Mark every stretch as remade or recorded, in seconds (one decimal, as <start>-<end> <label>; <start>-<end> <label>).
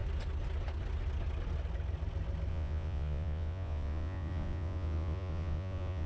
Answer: 0.0-2.5 recorded; 2.5-6.1 remade